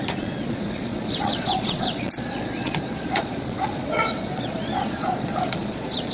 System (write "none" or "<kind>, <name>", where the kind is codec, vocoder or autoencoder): vocoder, Vocos